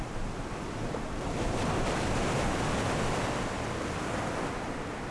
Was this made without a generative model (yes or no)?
yes